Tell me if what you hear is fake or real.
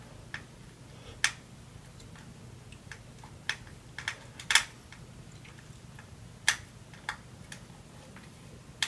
real